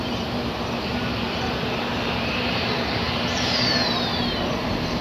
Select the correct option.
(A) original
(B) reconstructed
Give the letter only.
B